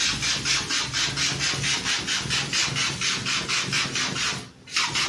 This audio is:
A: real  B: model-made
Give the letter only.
A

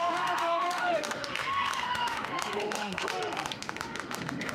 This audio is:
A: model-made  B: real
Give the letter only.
A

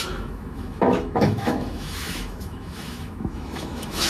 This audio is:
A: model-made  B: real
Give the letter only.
A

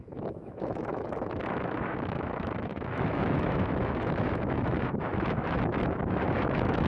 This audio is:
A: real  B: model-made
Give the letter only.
B